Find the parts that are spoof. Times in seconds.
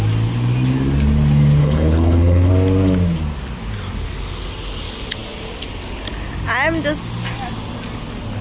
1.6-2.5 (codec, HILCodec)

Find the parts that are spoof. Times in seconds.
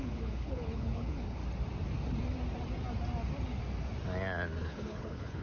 0.0-1.4 (codec, HILCodec); 4.6-5.4